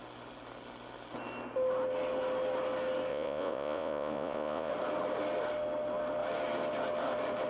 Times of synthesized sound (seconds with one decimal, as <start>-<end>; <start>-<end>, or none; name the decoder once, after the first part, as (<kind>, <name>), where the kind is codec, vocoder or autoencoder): 3.1-4.7 (vocoder, Vocos)

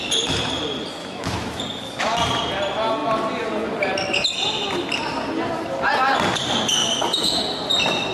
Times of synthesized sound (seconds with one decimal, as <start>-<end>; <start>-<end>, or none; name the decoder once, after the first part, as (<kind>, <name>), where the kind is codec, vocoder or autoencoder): 1.0-1.6 (autoencoder, DAC-VAE); 6.8-7.4

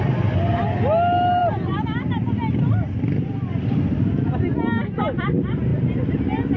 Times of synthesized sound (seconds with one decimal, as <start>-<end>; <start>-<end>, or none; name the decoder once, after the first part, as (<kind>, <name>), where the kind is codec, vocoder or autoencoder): none